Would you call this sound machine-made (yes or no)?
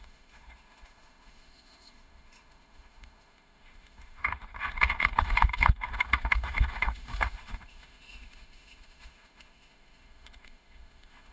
yes